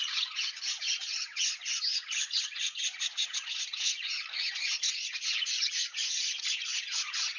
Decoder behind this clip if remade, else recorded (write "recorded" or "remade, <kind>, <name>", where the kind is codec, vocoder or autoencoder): remade, vocoder, Vocos